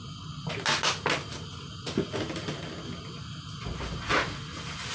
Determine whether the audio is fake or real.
real